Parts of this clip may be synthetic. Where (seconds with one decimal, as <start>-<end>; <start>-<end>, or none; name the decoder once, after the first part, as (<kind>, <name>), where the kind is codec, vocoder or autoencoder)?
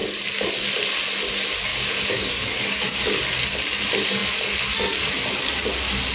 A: 1.7-3.2 (codec, DAC)